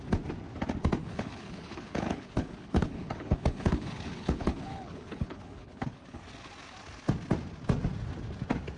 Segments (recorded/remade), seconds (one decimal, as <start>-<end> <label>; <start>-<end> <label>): 0.0-1.0 recorded; 1.0-6.2 remade; 6.2-8.8 recorded